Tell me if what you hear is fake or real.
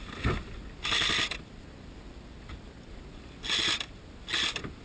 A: real